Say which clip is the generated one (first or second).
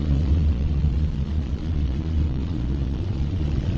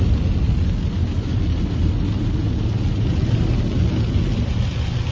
first